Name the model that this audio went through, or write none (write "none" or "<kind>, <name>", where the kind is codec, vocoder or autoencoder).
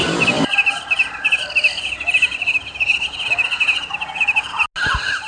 none